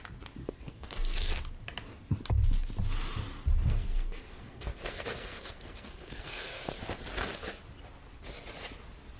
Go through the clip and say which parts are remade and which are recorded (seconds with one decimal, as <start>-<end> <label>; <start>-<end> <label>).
0.0-0.4 recorded; 0.4-1.3 remade; 1.3-3.6 recorded; 3.6-6.8 remade; 6.8-9.2 recorded

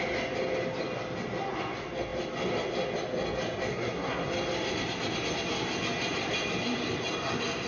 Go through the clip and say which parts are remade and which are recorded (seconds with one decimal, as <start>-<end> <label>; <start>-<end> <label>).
0.0-3.7 recorded; 3.7-4.3 remade; 4.3-7.7 recorded

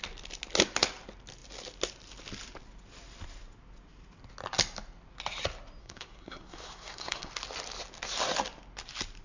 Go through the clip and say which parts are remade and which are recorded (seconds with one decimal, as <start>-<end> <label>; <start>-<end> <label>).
0.0-5.8 recorded; 5.8-7.3 remade; 7.3-9.2 recorded

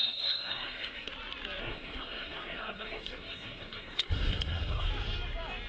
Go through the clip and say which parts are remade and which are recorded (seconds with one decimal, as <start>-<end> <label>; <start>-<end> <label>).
0.0-1.1 remade; 1.1-1.6 recorded; 1.6-4.9 remade; 4.9-5.7 recorded

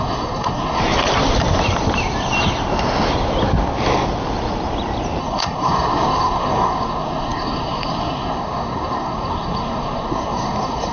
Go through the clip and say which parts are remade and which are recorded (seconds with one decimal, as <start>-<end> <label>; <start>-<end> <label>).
0.0-0.8 remade; 0.8-5.2 recorded; 5.2-10.9 remade

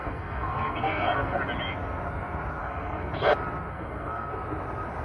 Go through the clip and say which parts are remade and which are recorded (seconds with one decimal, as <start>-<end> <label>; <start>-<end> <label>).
0.0-1.4 remade; 1.4-2.6 recorded; 2.6-3.1 remade; 3.1-3.7 recorded; 3.7-4.3 remade; 4.3-5.0 recorded

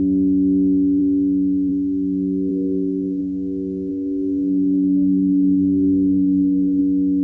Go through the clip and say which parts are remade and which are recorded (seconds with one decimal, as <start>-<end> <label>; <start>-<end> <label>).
0.0-2.5 recorded; 2.5-3.2 remade; 3.2-3.9 recorded; 3.9-6.8 remade; 6.8-7.2 recorded

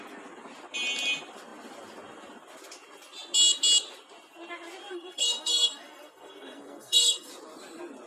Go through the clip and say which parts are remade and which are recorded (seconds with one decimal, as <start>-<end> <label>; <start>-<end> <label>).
0.0-4.9 recorded; 4.9-7.3 remade; 7.3-8.1 recorded